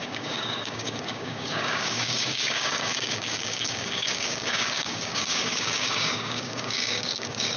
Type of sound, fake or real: fake